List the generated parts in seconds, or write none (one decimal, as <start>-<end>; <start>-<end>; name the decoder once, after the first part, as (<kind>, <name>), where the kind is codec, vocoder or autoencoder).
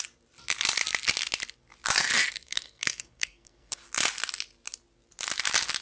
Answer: 2.0-3.8 (codec, SNAC)